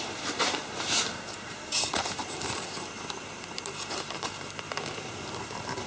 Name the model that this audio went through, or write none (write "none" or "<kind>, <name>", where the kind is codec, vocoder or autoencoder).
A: vocoder, BigVGAN v2